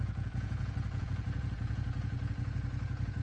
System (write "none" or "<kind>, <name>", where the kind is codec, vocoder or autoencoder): vocoder, Vocos